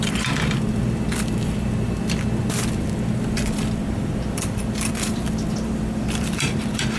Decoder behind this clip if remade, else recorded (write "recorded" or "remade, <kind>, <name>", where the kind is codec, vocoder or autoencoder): remade, vocoder, BigVGAN v2